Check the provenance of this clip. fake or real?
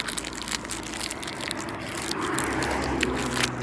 real